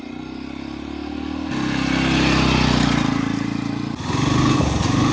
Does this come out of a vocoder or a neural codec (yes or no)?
no